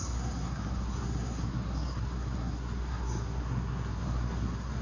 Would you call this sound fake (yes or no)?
yes